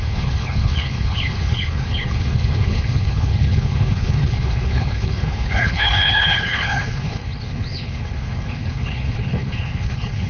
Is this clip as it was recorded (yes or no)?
no